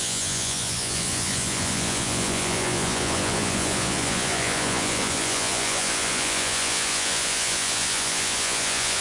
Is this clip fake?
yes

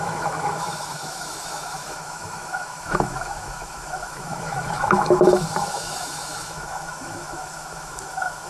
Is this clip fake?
yes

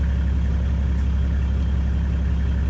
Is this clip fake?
no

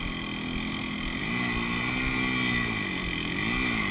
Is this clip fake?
no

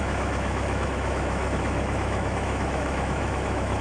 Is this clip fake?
yes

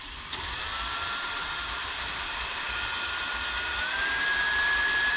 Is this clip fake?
yes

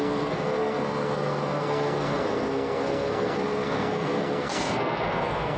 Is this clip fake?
yes